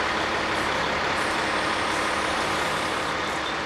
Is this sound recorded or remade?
remade